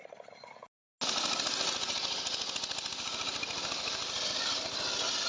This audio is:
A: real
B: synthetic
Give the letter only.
A